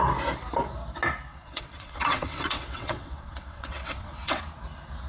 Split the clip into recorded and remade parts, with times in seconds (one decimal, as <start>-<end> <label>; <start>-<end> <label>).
0.0-1.3 recorded; 1.3-4.4 remade; 4.4-5.1 recorded